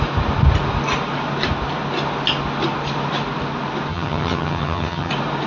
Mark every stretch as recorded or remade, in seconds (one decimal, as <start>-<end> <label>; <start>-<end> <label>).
0.0-3.9 recorded; 3.9-5.1 remade; 5.1-5.5 recorded